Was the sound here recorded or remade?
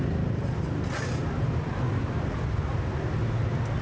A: recorded